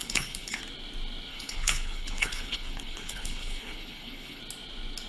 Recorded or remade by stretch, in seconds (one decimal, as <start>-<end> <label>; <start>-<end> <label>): 0.0-0.6 remade; 0.6-1.3 recorded; 1.3-4.4 remade; 4.4-5.1 recorded

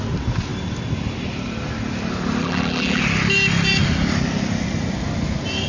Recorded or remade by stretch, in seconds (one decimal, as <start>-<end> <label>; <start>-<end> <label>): 0.0-2.4 recorded; 2.4-3.0 remade; 3.0-5.7 recorded

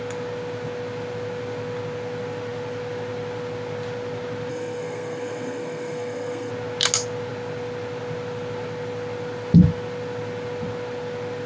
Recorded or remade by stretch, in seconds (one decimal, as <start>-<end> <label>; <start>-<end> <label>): 0.0-4.5 recorded; 4.5-6.5 remade; 6.5-11.5 recorded

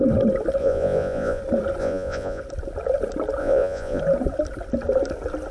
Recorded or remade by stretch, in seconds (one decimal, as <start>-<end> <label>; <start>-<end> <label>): 0.0-0.6 recorded; 0.6-1.4 remade; 1.4-1.8 recorded; 1.8-2.4 remade; 2.4-3.4 recorded; 3.4-4.0 remade; 4.0-5.5 recorded